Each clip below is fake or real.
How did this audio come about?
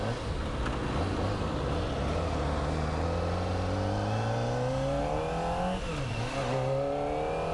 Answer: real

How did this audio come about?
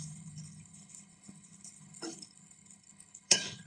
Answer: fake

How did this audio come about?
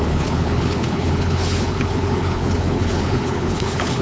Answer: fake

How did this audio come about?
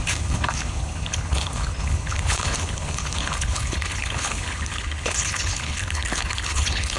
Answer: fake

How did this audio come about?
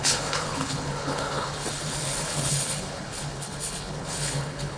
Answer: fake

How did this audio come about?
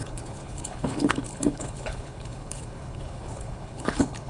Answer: fake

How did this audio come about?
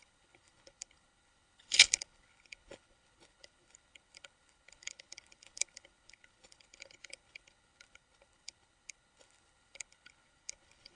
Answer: fake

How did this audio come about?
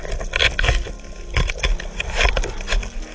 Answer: real